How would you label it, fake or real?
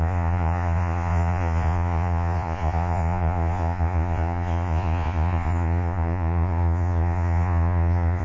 fake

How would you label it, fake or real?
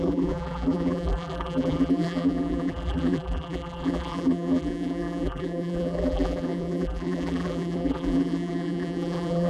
fake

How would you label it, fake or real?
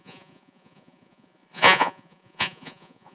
fake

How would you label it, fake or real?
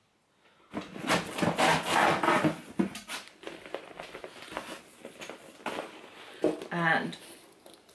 real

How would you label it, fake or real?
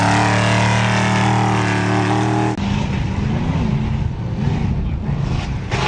real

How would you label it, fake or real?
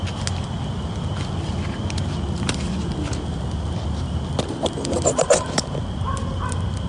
real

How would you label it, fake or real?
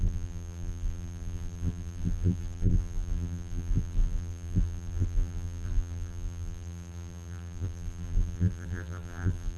fake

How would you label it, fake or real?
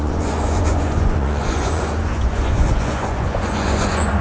fake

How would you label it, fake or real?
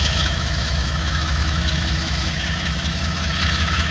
fake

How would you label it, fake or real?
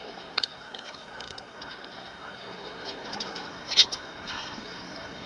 fake